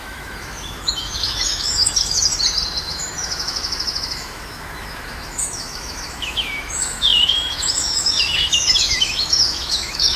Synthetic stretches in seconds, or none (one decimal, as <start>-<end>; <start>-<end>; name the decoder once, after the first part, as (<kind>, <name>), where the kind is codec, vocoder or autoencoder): 0.0-2.3 (autoencoder, DAC-VAE); 2.8-10.2